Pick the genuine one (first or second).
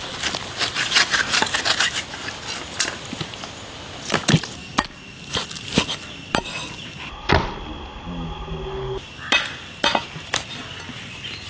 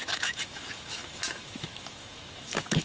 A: first